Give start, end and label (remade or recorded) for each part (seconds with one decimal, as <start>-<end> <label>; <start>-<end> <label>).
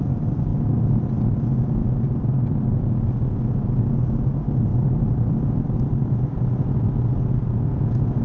0.0-0.5 recorded; 0.5-1.2 remade; 1.2-1.8 recorded; 1.8-3.1 remade; 3.1-4.7 recorded; 4.7-6.6 remade; 6.6-8.2 recorded